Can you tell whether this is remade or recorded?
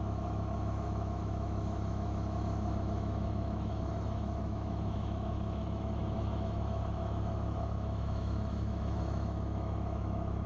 remade